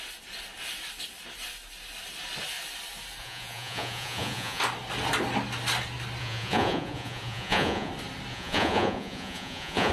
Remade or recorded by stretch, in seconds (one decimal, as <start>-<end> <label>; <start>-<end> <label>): 0.0-3.2 recorded; 3.2-4.6 remade; 4.6-6.2 recorded; 6.2-7.9 remade; 7.9-8.3 recorded; 8.3-9.9 remade